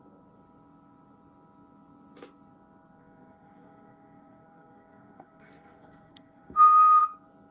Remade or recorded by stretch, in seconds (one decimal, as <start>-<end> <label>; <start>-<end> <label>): 0.0-3.0 recorded; 3.0-7.0 remade; 7.0-7.5 recorded